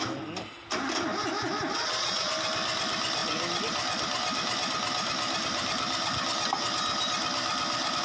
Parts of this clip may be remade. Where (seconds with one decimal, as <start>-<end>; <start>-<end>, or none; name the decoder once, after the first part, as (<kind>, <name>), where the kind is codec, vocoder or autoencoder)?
1.7-2.3 (vocoder, Vocos)